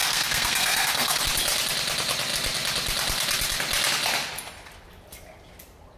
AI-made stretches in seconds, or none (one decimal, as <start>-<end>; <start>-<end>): 0.0-1.2